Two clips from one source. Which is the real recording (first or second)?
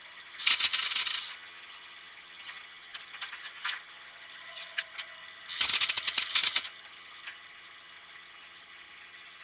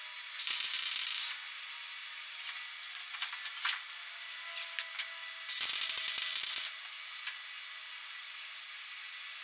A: second